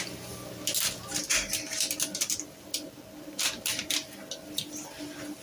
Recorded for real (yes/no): yes